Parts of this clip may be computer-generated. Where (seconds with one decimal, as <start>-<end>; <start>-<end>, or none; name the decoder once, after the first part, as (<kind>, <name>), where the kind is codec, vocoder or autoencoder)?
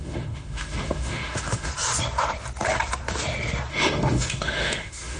0.0-1.7 (autoencoder, DAC-VAE); 3.7-5.2